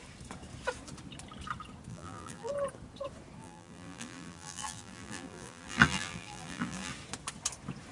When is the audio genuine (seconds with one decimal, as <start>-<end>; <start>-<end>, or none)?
0.0-1.9; 2.5-3.4; 6.9-7.9